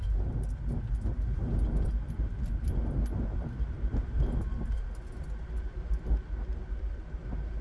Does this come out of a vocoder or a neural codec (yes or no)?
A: no